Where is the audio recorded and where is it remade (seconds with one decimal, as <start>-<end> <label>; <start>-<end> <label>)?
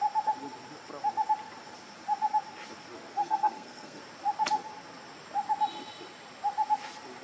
0.0-3.1 recorded; 3.1-4.0 remade; 4.0-7.2 recorded